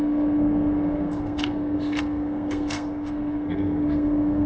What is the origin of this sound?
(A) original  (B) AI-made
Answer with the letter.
B